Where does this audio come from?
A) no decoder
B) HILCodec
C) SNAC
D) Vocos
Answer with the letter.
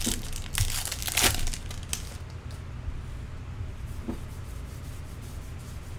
A